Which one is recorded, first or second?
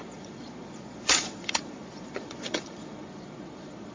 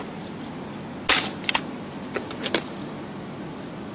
second